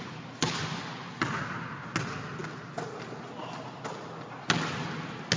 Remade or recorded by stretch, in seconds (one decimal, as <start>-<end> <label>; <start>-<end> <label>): 0.0-5.4 recorded